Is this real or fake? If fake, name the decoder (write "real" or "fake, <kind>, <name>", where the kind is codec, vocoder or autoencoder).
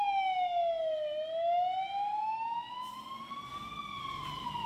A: real